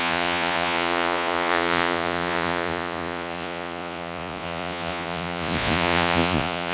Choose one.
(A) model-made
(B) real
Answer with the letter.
A